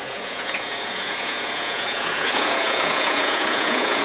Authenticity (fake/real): fake